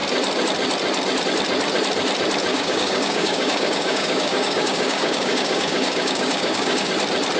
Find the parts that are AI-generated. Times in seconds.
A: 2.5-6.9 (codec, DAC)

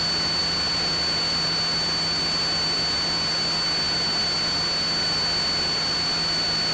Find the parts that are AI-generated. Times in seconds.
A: none

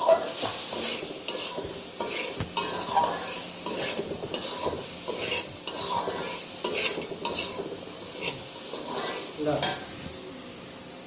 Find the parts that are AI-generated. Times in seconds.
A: none